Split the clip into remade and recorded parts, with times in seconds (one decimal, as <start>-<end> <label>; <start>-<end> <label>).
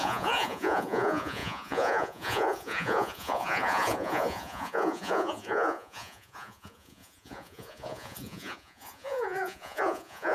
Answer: 0.0-10.3 remade